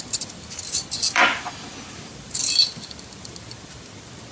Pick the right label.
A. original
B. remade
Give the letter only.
B